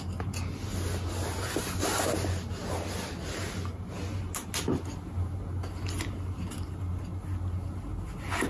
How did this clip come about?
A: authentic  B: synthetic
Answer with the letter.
A